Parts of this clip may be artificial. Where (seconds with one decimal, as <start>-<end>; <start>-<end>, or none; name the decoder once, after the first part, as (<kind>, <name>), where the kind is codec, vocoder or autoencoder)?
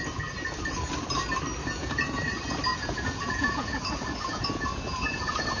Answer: 1.6-2.2 (vocoder, Vocos); 2.7-5.6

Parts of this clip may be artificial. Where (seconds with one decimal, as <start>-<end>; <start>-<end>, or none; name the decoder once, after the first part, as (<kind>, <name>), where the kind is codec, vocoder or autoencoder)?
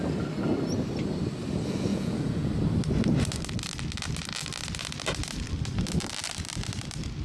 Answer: 1.9-2.5 (vocoder, Vocos)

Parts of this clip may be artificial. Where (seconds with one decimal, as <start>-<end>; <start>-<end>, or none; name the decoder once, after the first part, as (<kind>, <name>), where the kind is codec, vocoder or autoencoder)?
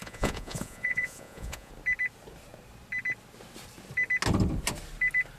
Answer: 0.0-1.7 (vocoder, Vocos)